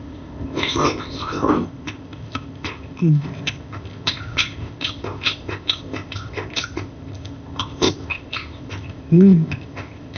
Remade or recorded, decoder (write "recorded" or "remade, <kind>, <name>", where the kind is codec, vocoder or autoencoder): remade, codec, ZipCodec